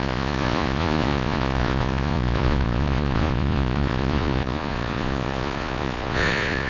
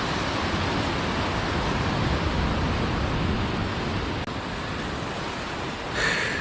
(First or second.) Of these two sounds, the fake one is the first